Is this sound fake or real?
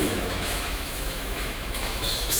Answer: fake